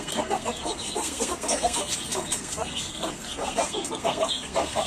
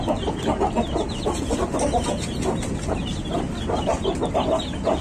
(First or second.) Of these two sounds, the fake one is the first